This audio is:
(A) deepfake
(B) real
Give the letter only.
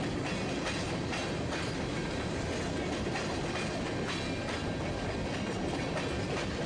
B